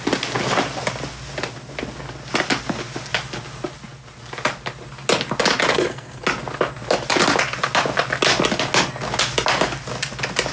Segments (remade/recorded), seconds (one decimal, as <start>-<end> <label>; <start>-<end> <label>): 0.0-5.7 recorded; 5.7-6.2 remade; 6.2-10.5 recorded